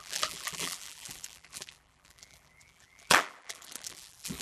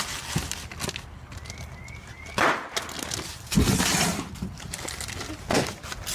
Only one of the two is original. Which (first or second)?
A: second